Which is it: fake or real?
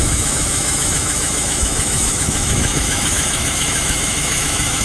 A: fake